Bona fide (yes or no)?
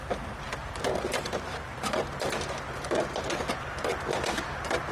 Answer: yes